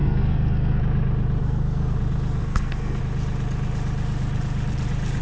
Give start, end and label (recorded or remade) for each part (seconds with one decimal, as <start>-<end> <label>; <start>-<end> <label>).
0.0-0.8 remade; 0.8-1.4 recorded; 1.4-2.0 remade; 2.0-2.4 recorded; 2.4-3.0 remade; 3.0-5.2 recorded